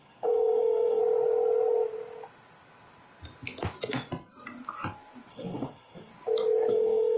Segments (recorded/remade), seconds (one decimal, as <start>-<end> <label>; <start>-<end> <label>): 0.0-1.0 remade; 1.0-5.3 recorded; 5.3-6.1 remade; 6.1-6.7 recorded; 6.7-7.2 remade